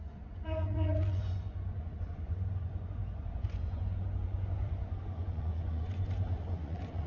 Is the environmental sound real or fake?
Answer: fake